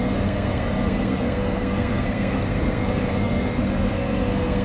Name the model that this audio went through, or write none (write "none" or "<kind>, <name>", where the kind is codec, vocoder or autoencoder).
codec, SNAC